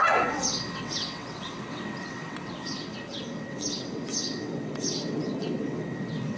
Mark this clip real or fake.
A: fake